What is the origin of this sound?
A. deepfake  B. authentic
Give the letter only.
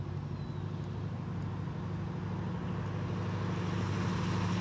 B